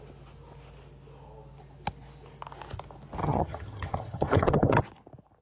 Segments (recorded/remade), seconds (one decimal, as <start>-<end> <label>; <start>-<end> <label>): 0.0-3.2 recorded; 3.2-4.8 remade; 4.8-5.4 recorded